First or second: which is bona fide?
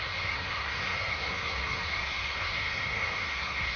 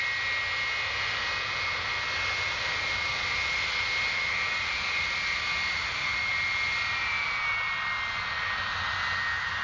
second